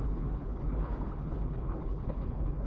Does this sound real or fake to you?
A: fake